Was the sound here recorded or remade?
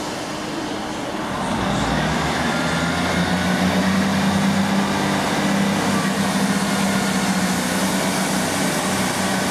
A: recorded